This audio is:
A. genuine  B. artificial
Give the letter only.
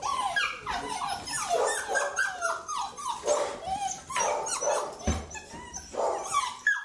A